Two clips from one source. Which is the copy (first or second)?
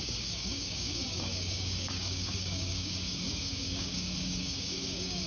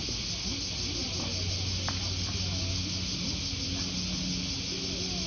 first